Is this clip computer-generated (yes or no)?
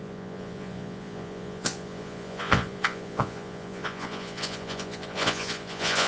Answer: yes